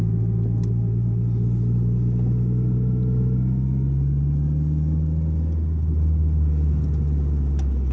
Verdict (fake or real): real